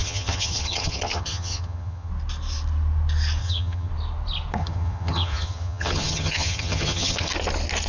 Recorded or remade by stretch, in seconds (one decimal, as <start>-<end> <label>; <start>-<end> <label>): 0.0-2.1 remade; 2.1-3.4 recorded; 3.4-3.9 remade; 3.9-4.6 recorded; 4.6-7.3 remade; 7.3-7.9 recorded